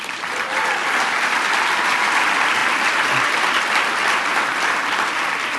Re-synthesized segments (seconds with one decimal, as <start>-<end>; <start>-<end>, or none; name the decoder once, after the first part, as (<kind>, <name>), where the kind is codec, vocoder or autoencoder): 0.0-0.8 (vocoder, BigVGAN v2); 2.1-2.6; 4.2-5.6